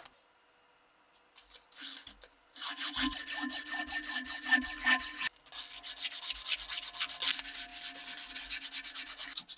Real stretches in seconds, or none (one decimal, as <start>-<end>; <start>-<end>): 0.0-9.6

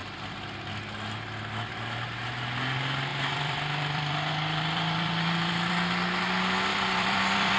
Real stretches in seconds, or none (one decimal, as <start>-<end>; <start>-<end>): 0.7-3.1; 5.7-6.7

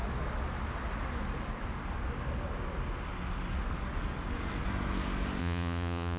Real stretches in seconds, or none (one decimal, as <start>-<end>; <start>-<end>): 0.0-5.4

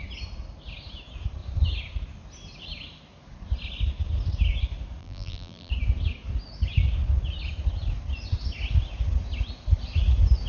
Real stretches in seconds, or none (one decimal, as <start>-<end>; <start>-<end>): 0.0-5.0; 5.7-10.5

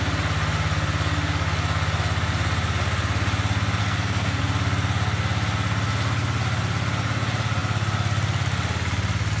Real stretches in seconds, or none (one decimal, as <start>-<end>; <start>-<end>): 0.0-3.8; 4.4-9.4

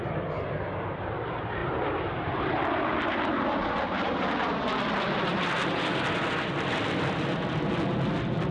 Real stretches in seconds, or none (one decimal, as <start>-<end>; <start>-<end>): 0.0-8.5